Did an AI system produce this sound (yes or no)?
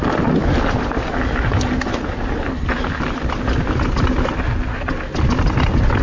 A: no